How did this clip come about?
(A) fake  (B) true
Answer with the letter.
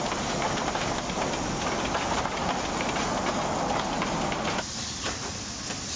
B